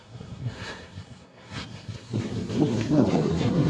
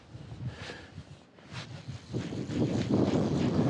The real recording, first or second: second